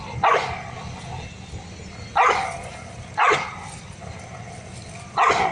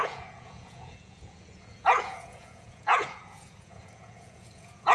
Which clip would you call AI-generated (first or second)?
second